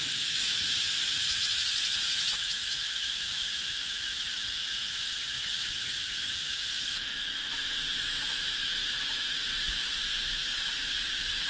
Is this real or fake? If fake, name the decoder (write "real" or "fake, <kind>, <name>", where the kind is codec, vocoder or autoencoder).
fake, autoencoder, DAC-VAE